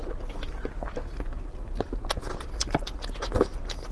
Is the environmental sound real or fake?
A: real